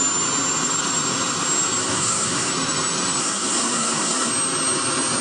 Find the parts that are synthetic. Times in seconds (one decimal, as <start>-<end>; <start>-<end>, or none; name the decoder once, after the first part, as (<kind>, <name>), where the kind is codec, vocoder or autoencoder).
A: 1.8-2.5 (codec, SNAC); 3.2-4.3